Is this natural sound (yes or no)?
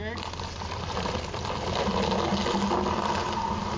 yes